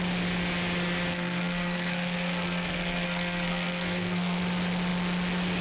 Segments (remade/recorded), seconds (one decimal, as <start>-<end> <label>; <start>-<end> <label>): 0.0-1.1 recorded; 1.1-4.4 remade; 4.4-5.6 recorded